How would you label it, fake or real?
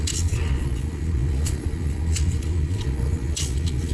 fake